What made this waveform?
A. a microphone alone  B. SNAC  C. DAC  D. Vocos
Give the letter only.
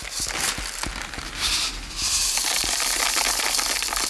A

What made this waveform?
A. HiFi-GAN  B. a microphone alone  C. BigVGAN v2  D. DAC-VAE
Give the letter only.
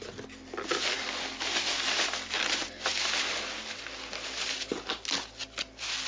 B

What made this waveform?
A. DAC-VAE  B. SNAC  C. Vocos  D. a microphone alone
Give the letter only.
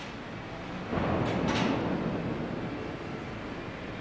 D